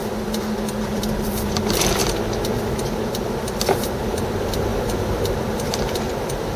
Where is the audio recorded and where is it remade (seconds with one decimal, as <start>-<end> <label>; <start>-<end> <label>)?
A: 0.0-0.9 recorded; 0.9-2.0 remade; 2.0-3.2 recorded; 3.2-6.6 remade